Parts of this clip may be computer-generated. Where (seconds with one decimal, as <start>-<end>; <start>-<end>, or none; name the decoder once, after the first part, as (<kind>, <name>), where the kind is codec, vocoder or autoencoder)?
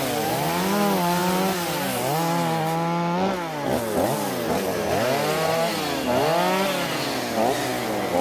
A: none